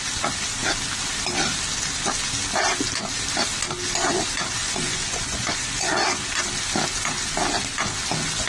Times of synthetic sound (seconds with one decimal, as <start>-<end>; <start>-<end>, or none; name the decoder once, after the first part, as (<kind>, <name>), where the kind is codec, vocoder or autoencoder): 4.6-5.9 (vocoder, Vocos)